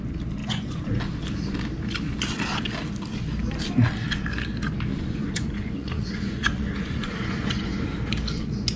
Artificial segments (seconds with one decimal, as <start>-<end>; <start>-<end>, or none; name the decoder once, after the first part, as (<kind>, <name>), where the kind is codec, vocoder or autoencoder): 0.4-1.0 (vocoder, Vocos); 4.9-7.9